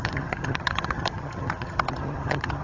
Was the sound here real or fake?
fake